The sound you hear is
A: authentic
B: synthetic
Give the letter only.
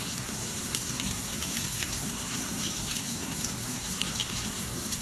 B